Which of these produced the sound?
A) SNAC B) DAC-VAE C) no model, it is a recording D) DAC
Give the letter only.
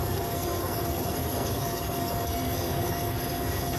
A